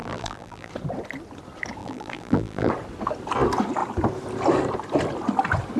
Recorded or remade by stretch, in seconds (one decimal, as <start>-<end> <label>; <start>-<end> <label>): 0.0-0.7 remade; 0.7-1.8 recorded; 1.8-2.7 remade; 2.7-5.8 recorded